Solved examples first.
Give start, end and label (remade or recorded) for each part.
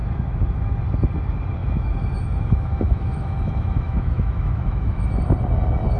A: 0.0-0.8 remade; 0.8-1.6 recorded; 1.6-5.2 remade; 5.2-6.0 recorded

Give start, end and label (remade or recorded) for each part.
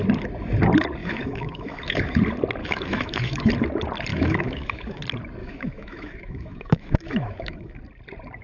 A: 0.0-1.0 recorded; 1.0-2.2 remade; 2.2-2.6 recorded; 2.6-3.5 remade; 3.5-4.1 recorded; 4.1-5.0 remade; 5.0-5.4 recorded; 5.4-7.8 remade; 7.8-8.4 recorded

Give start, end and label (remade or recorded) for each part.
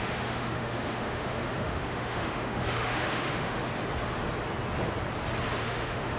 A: 0.0-3.7 remade; 3.7-5.6 recorded; 5.6-6.2 remade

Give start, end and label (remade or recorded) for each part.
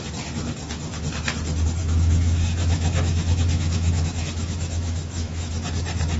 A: 0.0-1.8 recorded; 1.8-5.5 remade; 5.5-6.2 recorded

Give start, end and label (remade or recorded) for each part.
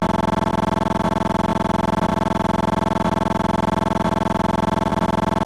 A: 0.0-5.5 recorded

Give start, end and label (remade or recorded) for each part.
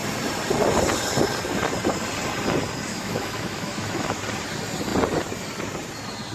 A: 0.0-2.9 recorded; 2.9-4.2 remade; 4.2-6.3 recorded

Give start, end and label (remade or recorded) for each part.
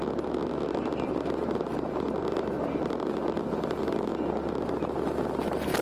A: 0.0-5.8 recorded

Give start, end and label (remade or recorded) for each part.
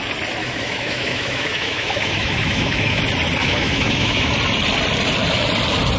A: 0.0-0.4 recorded; 0.4-3.0 remade; 3.0-3.4 recorded; 3.4-4.3 remade; 4.3-6.0 recorded